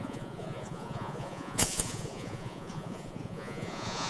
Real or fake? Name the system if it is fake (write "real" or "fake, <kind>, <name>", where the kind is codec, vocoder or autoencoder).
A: fake, vocoder, Vocos